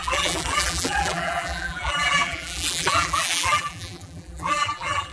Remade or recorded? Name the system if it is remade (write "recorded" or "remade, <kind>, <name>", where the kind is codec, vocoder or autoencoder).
remade, vocoder, BigVGAN v2